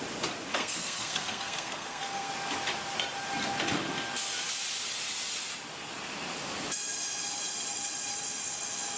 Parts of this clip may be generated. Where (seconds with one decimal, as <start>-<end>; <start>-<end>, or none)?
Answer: 0.5-2.3